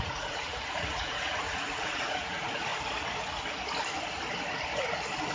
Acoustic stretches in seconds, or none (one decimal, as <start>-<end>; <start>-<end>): 2.7-5.3